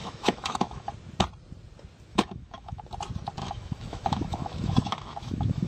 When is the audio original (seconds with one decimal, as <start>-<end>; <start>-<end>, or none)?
0.9-2.1; 2.8-3.4